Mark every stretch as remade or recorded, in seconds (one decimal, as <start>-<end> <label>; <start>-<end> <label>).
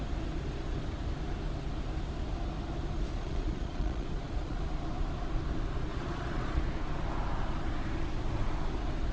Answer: 0.0-3.1 recorded; 3.1-4.6 remade; 4.6-5.9 recorded; 5.9-6.6 remade; 6.6-9.1 recorded